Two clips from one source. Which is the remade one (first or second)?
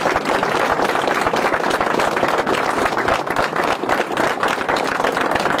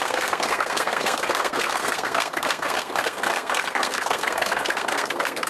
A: second